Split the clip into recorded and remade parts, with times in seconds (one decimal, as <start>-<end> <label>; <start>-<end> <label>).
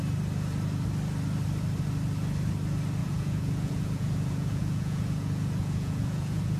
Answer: 0.0-3.0 recorded; 3.0-6.6 remade